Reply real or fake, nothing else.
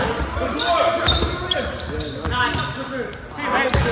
real